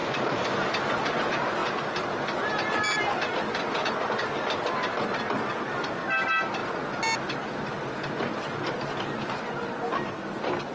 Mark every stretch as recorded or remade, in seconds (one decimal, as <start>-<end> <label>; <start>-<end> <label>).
0.0-10.7 recorded

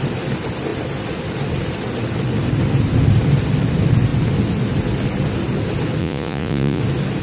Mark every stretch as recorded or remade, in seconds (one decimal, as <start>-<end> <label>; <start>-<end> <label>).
0.0-6.0 recorded; 6.0-6.8 remade; 6.8-7.2 recorded

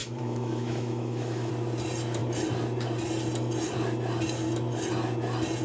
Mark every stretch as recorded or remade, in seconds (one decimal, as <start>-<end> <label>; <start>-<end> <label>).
0.0-1.5 remade; 1.5-5.6 recorded

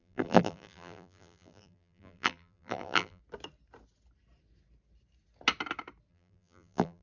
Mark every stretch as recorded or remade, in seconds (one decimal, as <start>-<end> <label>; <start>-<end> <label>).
0.0-3.2 remade; 3.2-6.1 recorded; 6.1-7.0 remade

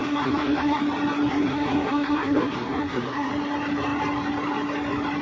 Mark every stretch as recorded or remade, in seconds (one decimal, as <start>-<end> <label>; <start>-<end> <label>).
0.0-0.8 remade; 0.8-1.3 recorded; 1.3-3.3 remade; 3.3-5.2 recorded

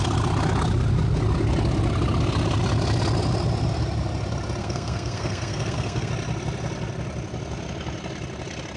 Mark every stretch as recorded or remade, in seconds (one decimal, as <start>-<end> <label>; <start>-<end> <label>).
0.0-4.6 recorded; 4.6-6.1 remade; 6.1-8.8 recorded

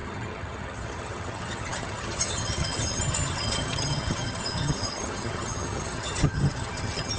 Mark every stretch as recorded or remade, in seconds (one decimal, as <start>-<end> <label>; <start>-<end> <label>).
0.0-7.2 remade

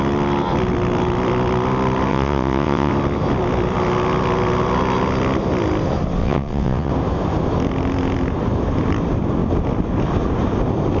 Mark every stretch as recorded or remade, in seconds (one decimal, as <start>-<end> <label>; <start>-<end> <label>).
0.0-2.1 recorded; 2.1-2.9 remade; 2.9-6.2 recorded; 6.2-6.9 remade; 6.9-11.0 recorded